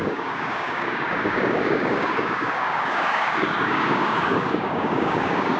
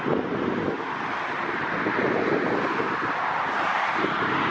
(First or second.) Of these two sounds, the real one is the second